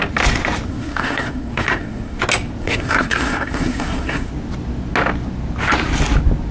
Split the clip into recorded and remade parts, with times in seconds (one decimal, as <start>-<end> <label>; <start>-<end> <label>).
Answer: 0.0-0.7 recorded; 0.7-2.2 remade; 2.2-2.6 recorded; 2.6-4.3 remade; 4.3-6.5 recorded